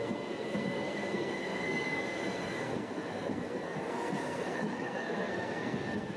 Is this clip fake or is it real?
fake